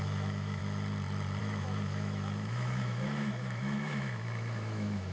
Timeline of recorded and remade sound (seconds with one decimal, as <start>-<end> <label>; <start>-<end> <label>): 0.0-0.6 remade; 0.6-1.4 recorded; 1.4-5.1 remade